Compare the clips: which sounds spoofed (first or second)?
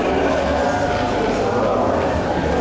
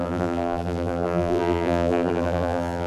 second